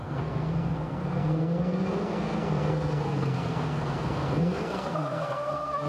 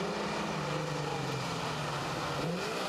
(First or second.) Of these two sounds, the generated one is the first